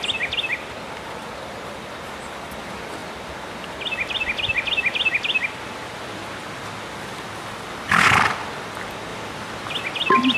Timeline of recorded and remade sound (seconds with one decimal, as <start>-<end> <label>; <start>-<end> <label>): 0.0-10.4 recorded